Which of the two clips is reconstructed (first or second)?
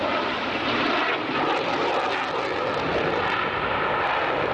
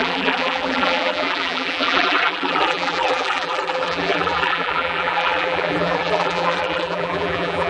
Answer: second